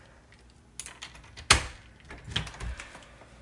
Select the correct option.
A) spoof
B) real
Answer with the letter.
B